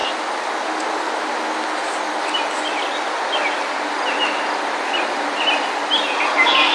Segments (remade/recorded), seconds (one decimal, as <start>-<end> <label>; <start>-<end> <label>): 0.0-6.7 recorded